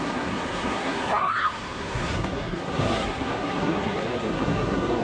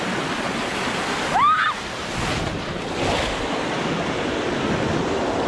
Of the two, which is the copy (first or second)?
first